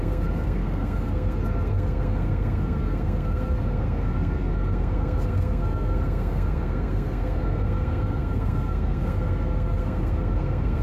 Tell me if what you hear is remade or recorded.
remade